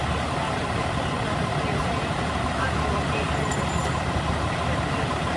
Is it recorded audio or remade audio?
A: recorded